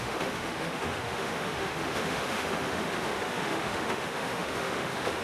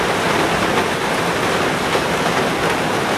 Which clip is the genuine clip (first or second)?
second